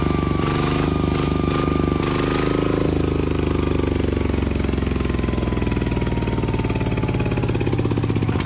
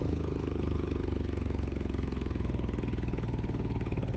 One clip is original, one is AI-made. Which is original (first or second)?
first